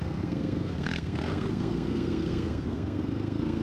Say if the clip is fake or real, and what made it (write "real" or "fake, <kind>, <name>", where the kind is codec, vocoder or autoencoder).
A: fake, codec, SNAC